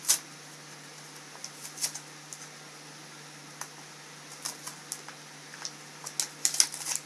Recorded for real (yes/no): yes